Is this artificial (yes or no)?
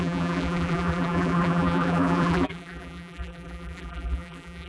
yes